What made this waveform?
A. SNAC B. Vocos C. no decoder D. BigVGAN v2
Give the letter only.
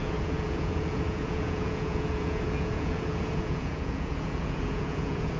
B